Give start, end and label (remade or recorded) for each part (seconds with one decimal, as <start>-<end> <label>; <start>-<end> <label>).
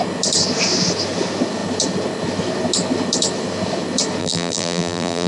0.0-4.2 recorded; 4.2-5.3 remade